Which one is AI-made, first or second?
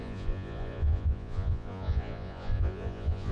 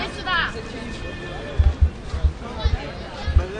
first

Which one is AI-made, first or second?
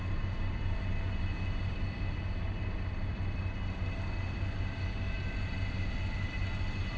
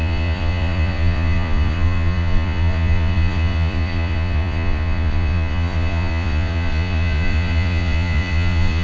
second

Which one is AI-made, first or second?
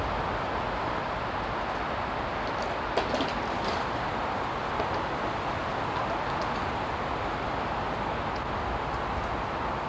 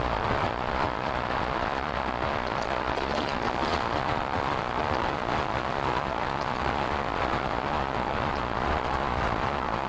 second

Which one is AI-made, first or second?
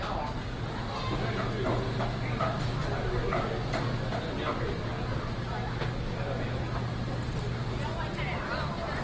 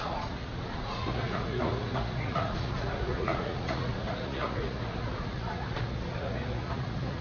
second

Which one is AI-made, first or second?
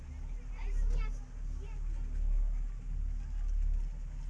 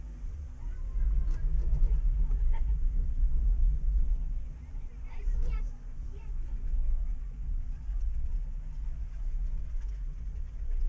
second